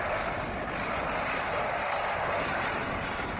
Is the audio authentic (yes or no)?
yes